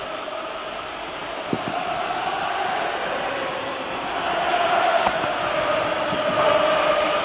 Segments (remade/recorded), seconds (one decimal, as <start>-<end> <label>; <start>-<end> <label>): 0.0-4.9 recorded; 4.9-5.5 remade; 5.5-7.2 recorded